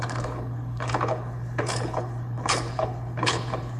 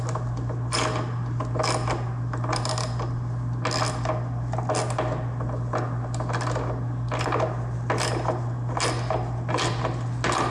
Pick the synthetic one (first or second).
first